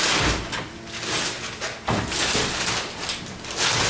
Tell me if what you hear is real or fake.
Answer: real